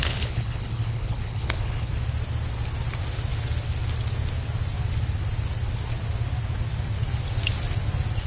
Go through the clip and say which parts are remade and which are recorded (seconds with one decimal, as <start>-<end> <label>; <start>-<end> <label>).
0.0-1.9 remade; 1.9-8.3 recorded